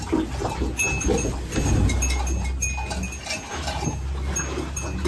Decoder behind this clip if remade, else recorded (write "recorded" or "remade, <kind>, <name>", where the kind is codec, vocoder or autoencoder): recorded